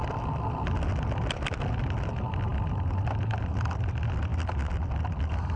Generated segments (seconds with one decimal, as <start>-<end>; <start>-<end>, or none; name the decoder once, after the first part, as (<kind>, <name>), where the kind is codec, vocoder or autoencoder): none